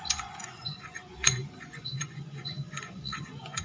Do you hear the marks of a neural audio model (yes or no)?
yes